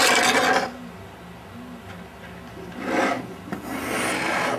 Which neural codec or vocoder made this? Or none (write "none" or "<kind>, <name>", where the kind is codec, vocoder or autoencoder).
none